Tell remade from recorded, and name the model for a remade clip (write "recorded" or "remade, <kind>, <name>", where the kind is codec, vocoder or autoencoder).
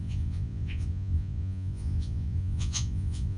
remade, vocoder, Vocos